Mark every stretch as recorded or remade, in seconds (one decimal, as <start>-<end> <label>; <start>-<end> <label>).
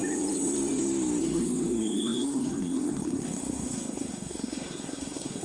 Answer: 0.0-1.2 recorded; 1.2-5.4 remade